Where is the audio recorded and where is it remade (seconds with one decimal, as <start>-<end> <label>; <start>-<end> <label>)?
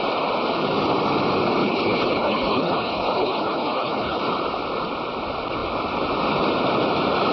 0.0-1.6 recorded; 1.6-4.2 remade; 4.2-7.3 recorded